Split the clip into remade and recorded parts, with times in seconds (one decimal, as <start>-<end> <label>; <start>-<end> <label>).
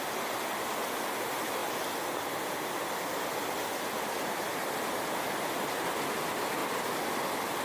0.0-7.6 recorded